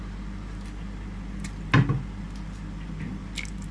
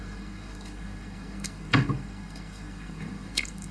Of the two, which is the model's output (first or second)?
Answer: second